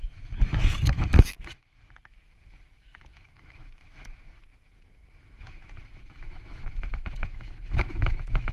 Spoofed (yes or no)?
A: yes